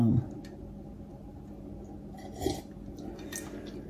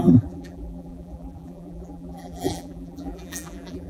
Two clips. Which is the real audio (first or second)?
first